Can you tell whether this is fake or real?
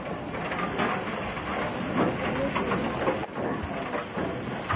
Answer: real